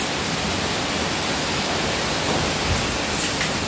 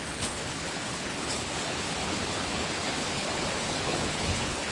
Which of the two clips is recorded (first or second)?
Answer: first